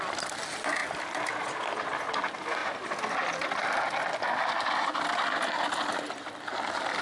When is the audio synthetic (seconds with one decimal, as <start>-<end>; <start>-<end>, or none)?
2.6-3.8